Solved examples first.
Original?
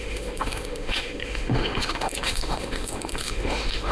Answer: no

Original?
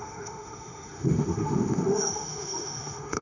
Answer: no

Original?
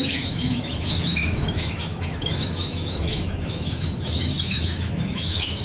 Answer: no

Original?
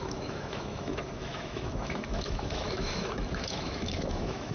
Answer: no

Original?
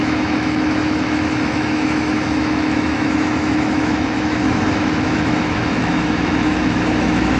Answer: no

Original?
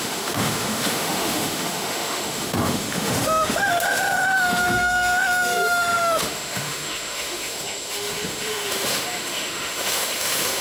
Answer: no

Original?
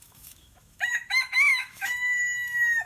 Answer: no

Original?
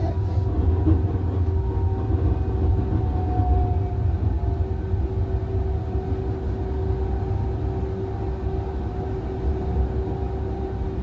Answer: yes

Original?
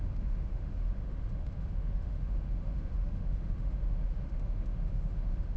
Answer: no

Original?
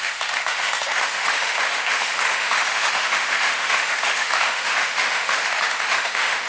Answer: no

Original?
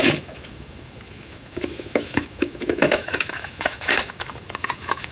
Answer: no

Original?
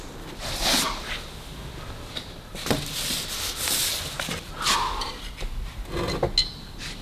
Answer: yes